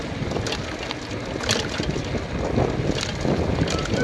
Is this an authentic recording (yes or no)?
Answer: yes